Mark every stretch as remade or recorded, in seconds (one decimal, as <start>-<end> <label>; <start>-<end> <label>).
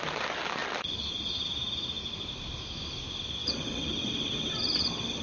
0.0-3.4 recorded; 3.4-5.2 remade